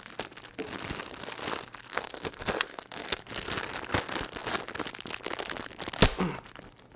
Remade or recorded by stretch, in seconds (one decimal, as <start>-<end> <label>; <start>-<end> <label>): 0.0-1.9 recorded; 1.9-3.2 remade; 3.2-7.0 recorded